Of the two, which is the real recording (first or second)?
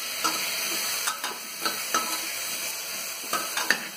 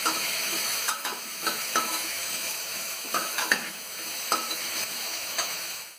first